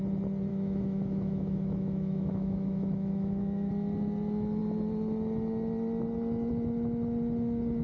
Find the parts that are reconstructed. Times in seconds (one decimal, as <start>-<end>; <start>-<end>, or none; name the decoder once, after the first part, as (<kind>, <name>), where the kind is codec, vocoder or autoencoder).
0.5-3.7 (autoencoder, DAC-VAE)